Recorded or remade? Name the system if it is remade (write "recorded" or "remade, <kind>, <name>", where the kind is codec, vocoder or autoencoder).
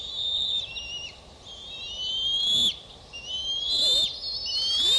recorded